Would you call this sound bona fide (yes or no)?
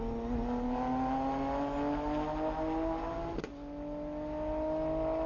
yes